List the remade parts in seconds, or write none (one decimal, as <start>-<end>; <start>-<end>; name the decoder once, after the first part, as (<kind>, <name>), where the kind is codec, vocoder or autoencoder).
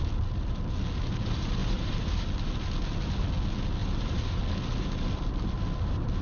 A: 1.6-2.1 (vocoder, BigVGAN v2); 3.8-4.4